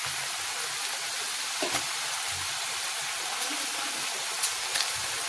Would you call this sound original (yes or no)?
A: yes